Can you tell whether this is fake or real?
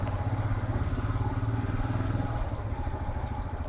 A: real